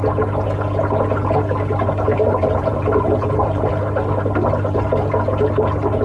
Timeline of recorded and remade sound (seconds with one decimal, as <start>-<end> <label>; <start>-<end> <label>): 0.0-2.4 recorded; 2.4-3.7 remade; 3.7-6.0 recorded